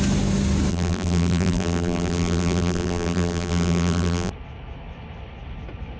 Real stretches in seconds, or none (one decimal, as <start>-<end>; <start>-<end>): 0.0-0.7; 4.3-6.0